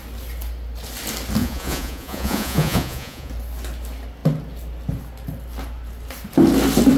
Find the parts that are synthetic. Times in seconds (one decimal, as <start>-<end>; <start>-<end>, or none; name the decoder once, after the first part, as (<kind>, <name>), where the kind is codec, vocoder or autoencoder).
1.4-3.3 (vocoder, Vocos)